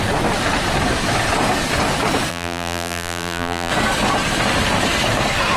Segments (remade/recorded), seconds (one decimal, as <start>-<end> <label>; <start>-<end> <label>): 0.0-2.3 recorded; 2.3-3.7 remade; 3.7-5.6 recorded